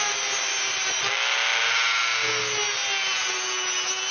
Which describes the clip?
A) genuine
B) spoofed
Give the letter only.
A